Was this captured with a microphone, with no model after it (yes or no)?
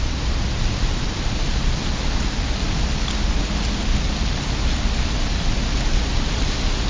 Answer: yes